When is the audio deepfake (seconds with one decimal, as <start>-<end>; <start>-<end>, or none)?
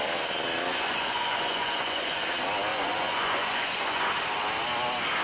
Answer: 0.7-2.2; 2.7-4.0